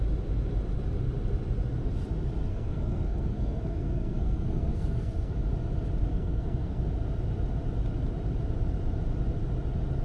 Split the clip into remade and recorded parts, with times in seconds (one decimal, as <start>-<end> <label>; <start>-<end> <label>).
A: 0.0-2.5 recorded; 2.5-5.3 remade; 5.3-6.1 recorded; 6.1-6.8 remade; 6.8-10.0 recorded